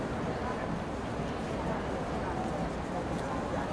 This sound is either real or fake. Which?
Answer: real